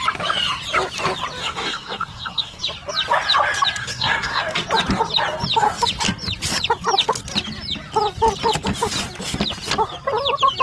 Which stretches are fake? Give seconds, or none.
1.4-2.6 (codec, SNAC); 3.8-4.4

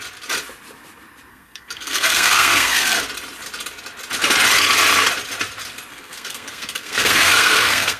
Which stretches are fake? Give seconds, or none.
1.3-3.0 (codec, SNAC); 5.9-8.0

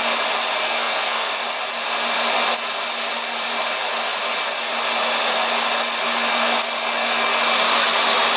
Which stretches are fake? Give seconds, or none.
0.6-1.3 (codec, SNAC)

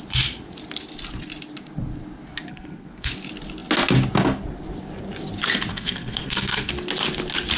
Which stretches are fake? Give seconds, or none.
2.5-3.1 (codec, SNAC); 5.7-6.7

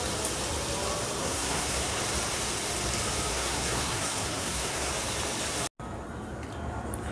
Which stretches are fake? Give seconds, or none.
1.2-2.0 (codec, SNAC); 3.3-4.9

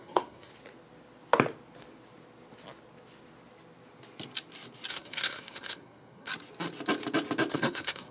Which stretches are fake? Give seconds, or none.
0.0-0.5 (codec, SNAC); 4.9-6.3; 7.5-8.1

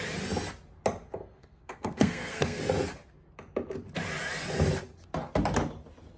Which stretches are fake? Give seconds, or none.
1.4-2.6 (codec, SNAC)

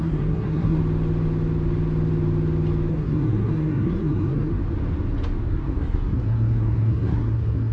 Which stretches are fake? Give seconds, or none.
0.0-0.8 (codec, SNAC); 2.9-4.5; 5.5-7.7